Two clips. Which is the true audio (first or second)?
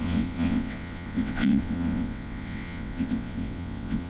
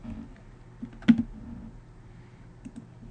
second